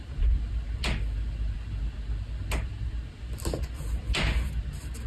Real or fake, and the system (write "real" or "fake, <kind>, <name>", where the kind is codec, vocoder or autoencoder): real